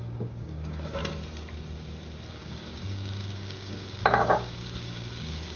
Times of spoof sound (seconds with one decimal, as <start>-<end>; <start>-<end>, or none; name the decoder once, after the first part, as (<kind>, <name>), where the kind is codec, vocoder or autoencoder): 0.0-1.0 (codec, DAC); 2.3-5.6